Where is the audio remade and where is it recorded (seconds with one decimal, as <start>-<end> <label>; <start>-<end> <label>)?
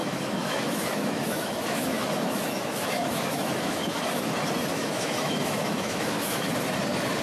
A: 0.0-4.3 remade; 4.3-4.7 recorded; 4.7-6.5 remade; 6.5-7.2 recorded